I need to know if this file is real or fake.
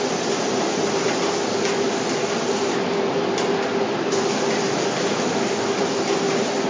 real